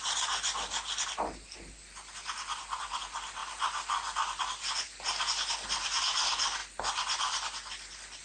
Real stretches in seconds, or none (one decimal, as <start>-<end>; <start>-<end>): 0.0-3.4; 4.4-6.6; 7.7-8.2